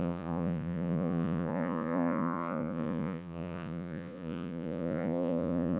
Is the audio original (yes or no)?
no